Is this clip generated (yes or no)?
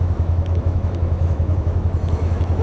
yes